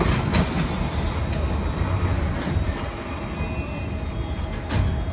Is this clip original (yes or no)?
yes